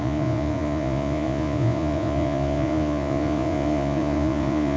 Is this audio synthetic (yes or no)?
yes